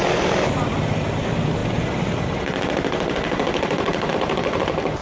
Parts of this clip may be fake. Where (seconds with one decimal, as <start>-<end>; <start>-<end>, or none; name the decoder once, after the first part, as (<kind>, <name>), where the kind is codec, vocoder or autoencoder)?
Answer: none